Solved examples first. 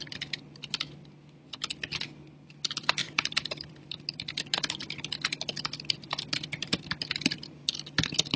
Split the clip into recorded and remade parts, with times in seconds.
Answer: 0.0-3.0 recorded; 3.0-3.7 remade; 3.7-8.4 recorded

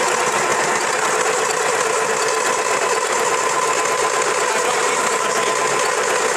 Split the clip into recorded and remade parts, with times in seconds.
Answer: 0.0-0.5 recorded; 0.5-1.1 remade; 1.1-6.4 recorded

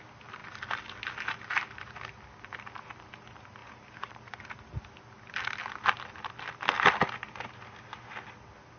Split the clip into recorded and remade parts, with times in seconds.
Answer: 0.0-3.6 recorded; 3.6-4.4 remade; 4.4-8.8 recorded